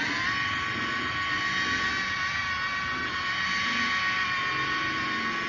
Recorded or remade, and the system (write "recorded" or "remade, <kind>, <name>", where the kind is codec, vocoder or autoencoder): recorded